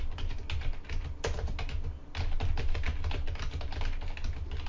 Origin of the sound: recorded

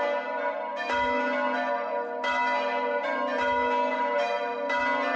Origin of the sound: recorded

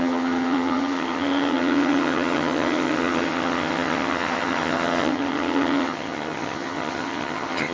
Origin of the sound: remade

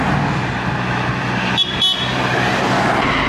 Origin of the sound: recorded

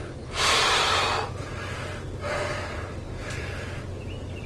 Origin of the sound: recorded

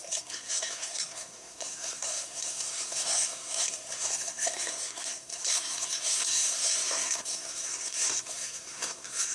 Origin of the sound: remade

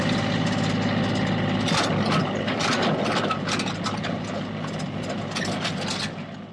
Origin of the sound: recorded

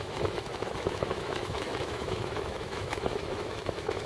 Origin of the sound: remade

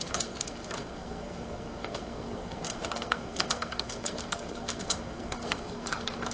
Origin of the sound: remade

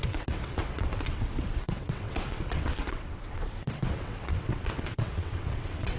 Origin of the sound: remade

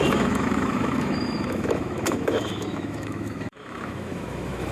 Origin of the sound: remade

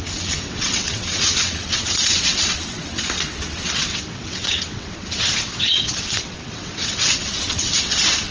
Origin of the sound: remade